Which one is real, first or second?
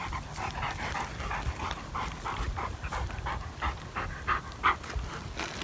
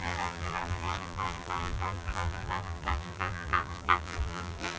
first